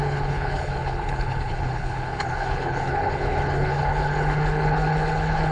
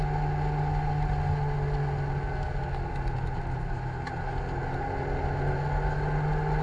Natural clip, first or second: second